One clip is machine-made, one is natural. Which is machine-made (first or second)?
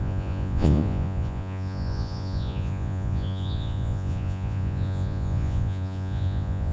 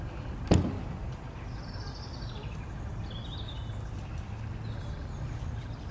first